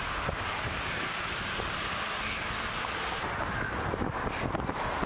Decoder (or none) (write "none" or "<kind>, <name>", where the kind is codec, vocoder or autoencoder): none